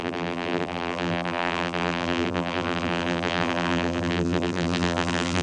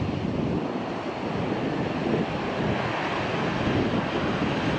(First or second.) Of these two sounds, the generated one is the first